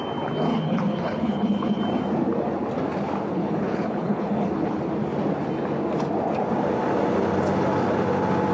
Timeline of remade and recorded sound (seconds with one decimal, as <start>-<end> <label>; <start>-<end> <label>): 0.0-0.5 recorded; 0.5-1.8 remade; 1.8-3.3 recorded; 3.3-4.8 remade; 4.8-8.5 recorded